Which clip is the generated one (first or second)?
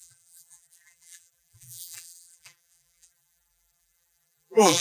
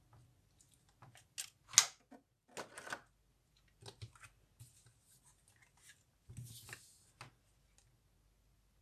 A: first